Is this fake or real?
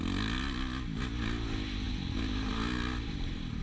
real